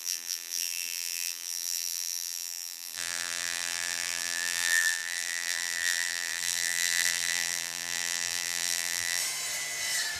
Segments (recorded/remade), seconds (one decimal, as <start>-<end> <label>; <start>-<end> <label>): 0.0-9.2 remade; 9.2-10.2 recorded